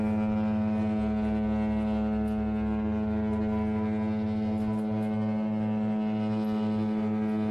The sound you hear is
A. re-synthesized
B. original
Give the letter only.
B